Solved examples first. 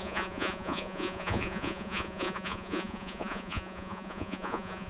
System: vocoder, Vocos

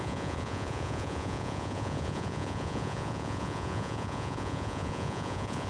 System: vocoder, Vocos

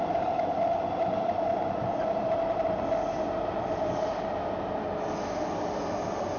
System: none